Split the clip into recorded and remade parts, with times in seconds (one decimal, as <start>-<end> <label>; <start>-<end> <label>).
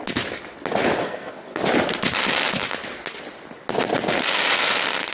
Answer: 0.0-1.0 recorded; 1.0-1.6 remade; 1.6-5.1 recorded